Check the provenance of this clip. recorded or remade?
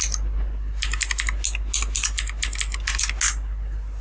recorded